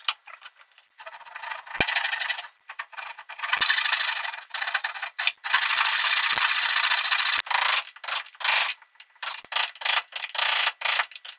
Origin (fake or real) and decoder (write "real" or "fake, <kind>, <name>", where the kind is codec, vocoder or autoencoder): real